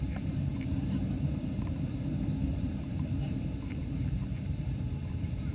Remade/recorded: remade